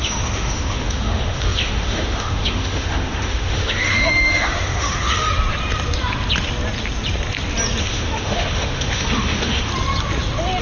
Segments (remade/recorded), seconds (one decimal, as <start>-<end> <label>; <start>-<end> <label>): 0.0-5.3 remade; 5.3-7.8 recorded; 7.8-9.7 remade; 9.7-10.6 recorded